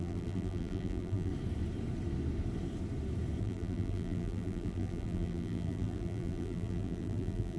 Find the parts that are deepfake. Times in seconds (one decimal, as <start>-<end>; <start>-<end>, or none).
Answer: 0.0-1.3; 3.4-7.6